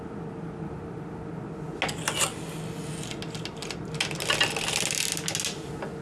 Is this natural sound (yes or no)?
yes